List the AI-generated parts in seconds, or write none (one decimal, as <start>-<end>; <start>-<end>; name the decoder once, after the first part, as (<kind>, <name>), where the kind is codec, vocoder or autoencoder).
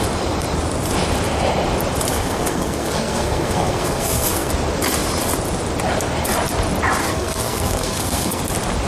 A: 2.1-4.5 (codec, SNAC); 7.0-8.4